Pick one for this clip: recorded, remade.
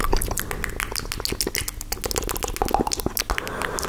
recorded